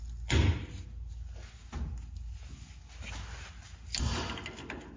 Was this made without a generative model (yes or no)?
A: yes